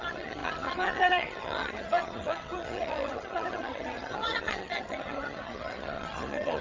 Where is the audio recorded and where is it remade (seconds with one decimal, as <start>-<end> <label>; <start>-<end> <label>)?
0.0-6.6 remade